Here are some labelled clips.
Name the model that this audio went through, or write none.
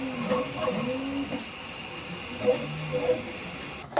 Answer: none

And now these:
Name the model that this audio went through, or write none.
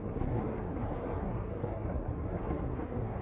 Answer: codec, SNAC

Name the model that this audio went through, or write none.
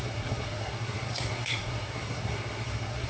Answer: codec, SNAC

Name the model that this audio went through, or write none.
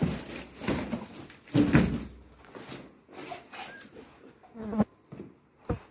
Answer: none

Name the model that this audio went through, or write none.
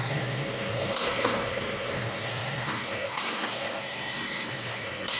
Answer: codec, SNAC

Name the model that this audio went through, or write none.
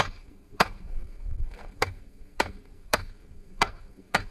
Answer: codec, SNAC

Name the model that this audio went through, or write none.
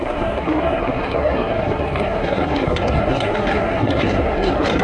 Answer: codec, SNAC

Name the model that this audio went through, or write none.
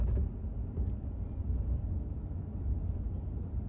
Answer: none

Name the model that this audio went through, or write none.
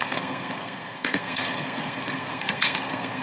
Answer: codec, SNAC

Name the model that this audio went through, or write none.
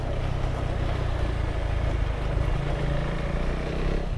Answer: none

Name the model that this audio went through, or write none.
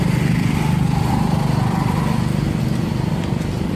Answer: none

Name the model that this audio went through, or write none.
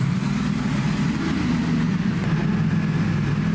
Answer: none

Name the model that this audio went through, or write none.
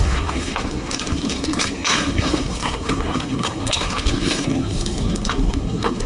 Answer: codec, SNAC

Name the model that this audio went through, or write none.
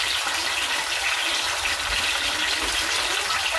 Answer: none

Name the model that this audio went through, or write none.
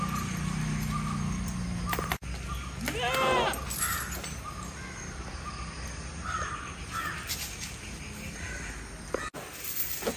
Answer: none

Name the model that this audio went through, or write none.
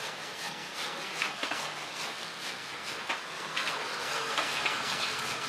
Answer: codec, SNAC